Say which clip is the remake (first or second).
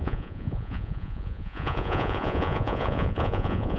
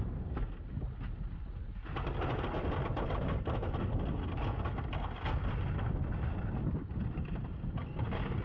first